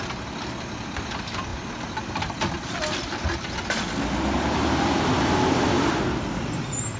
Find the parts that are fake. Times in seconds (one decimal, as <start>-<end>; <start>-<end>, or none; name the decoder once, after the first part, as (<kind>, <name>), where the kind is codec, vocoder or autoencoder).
none